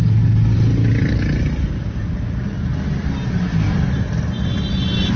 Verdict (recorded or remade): recorded